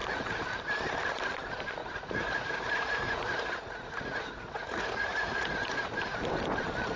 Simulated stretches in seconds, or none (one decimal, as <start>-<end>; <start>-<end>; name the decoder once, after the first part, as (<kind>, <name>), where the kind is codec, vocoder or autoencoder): 0.0-0.5 (vocoder, Vocos); 1.8-6.0